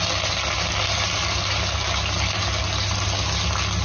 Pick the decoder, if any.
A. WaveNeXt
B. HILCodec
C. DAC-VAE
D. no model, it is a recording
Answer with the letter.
D